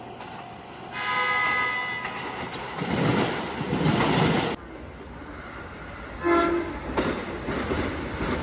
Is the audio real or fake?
real